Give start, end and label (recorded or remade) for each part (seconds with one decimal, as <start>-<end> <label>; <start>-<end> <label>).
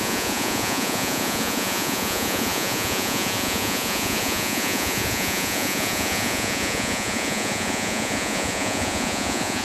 0.0-9.6 remade